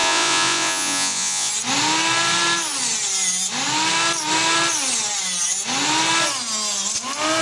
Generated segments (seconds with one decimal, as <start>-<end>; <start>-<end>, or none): 0.0-1.5

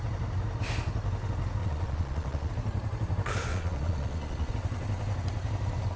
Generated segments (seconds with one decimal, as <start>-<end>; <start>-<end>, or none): 1.6-2.5; 3.5-4.5